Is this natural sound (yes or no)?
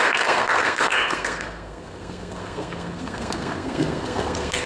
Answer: no